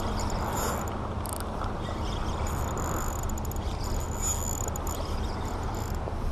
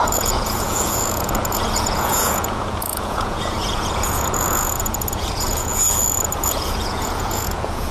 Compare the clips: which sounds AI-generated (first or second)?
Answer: second